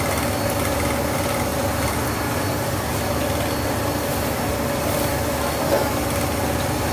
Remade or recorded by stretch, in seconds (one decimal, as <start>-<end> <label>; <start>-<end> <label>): 0.0-4.5 recorded; 4.5-5.0 remade; 5.0-6.9 recorded